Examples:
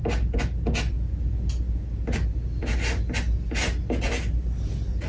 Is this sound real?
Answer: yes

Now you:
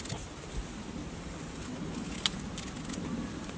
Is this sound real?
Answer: yes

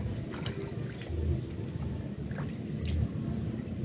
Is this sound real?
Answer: yes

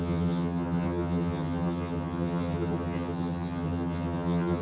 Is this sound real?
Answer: no